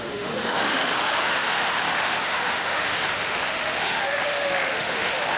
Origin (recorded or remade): remade